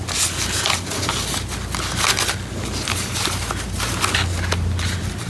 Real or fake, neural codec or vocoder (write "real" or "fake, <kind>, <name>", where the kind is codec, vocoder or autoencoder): real